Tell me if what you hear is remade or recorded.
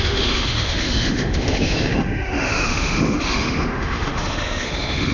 remade